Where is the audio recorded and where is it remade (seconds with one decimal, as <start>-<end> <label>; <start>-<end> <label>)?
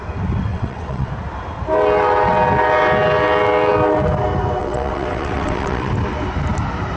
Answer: 0.0-0.5 recorded; 0.5-1.1 remade; 1.1-4.6 recorded; 4.6-5.9 remade; 5.9-7.0 recorded